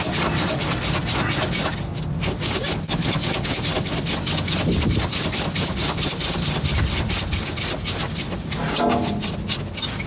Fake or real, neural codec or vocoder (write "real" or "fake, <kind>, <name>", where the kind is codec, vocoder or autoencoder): real